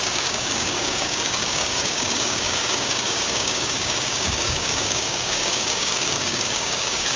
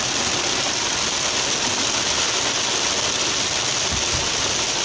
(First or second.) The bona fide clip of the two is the second